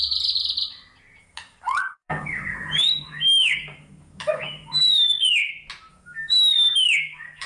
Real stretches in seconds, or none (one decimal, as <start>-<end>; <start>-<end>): 0.0-1.2; 5.5-5.9